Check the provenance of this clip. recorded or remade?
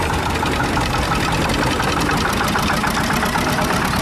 recorded